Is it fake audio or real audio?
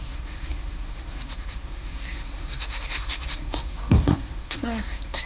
fake